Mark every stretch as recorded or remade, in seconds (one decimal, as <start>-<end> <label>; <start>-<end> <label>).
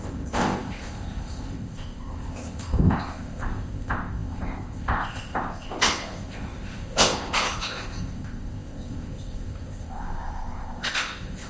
0.0-11.5 remade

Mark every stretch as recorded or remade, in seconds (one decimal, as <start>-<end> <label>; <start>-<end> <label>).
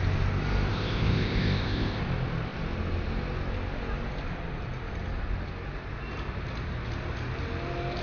0.0-0.7 recorded; 0.7-2.0 remade; 2.0-8.0 recorded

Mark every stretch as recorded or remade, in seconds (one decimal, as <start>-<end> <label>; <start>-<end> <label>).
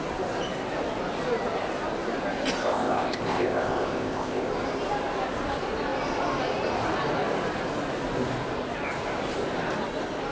0.0-2.6 recorded; 2.6-4.5 remade; 4.5-10.3 recorded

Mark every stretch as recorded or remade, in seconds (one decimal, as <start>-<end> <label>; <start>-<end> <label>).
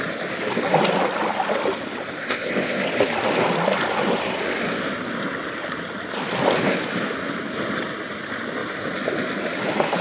0.0-2.2 recorded; 2.2-2.8 remade; 2.8-10.0 recorded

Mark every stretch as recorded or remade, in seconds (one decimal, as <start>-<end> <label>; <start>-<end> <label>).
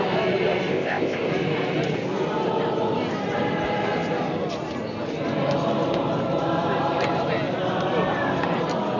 0.0-0.7 recorded; 0.7-1.3 remade; 1.3-9.0 recorded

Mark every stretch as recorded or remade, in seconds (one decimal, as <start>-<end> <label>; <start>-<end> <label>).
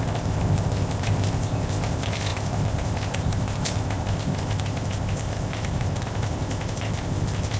0.0-7.6 remade